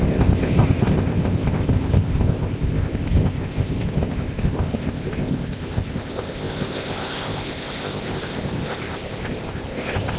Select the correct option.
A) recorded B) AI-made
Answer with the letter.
B